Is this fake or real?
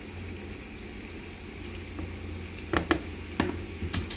real